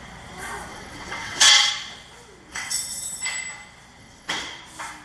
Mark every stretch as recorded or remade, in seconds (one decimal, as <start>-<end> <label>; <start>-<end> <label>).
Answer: 0.0-0.7 recorded; 0.7-1.7 remade; 1.7-2.5 recorded; 2.5-3.2 remade; 3.2-4.0 recorded; 4.0-4.6 remade; 4.6-5.0 recorded